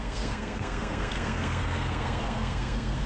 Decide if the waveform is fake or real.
fake